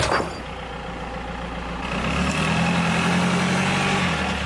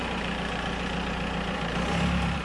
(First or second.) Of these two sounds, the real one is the first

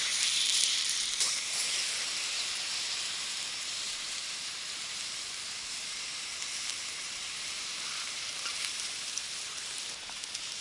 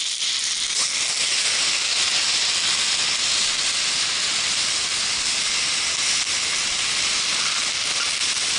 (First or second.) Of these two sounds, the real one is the second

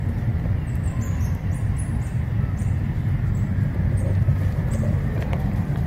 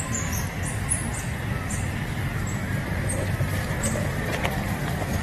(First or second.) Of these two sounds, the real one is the second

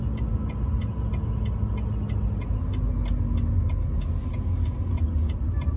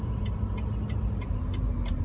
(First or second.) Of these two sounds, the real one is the first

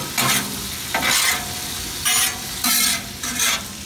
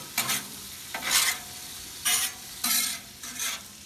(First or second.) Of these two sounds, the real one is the first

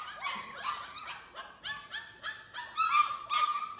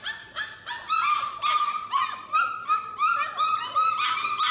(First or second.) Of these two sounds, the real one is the first